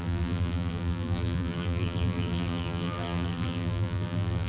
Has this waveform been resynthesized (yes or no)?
yes